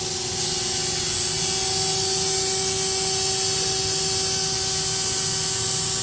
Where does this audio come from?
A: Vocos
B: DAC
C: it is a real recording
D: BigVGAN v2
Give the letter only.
C